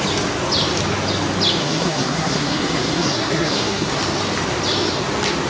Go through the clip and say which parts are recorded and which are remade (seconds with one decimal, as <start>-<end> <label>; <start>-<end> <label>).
0.0-1.6 recorded; 1.6-4.0 remade; 4.0-5.5 recorded